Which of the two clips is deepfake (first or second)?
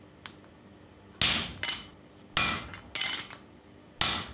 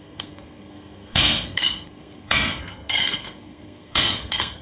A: second